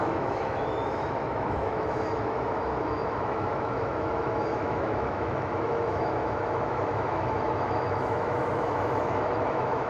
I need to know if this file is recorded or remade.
remade